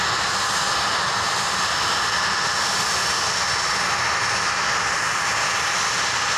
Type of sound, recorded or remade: recorded